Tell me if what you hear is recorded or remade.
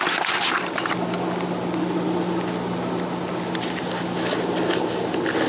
recorded